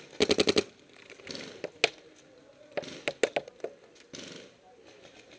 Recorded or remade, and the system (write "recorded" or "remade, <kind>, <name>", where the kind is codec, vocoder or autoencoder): recorded